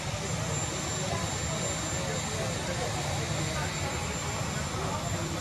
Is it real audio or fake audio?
real